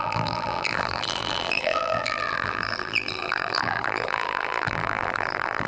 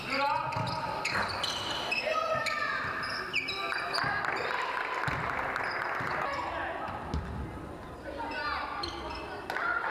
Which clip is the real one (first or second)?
second